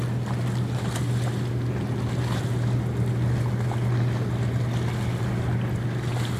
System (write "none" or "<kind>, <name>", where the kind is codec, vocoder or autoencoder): none